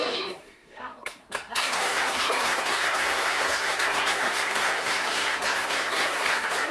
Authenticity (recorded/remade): remade